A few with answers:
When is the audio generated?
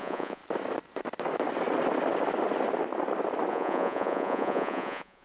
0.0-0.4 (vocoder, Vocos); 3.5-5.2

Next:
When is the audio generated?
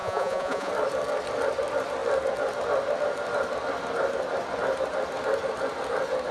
0.0-0.7 (vocoder, Vocos)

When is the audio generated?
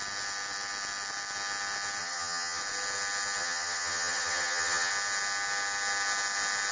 2.0-2.6 (vocoder, HiFi-GAN); 3.4-4.9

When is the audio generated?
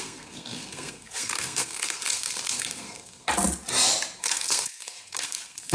0.0-3.3 (codec, SNAC); 4.2-5.7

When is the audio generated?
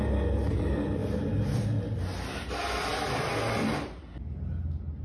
1.0-1.8 (vocoder, BigVGAN v2)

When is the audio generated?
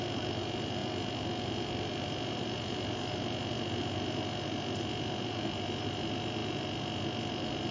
none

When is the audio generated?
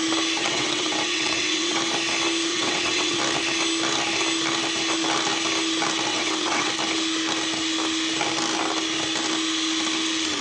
0.4-1.8 (vocoder, WaveNeXt); 2.5-3.2; 6.1-6.7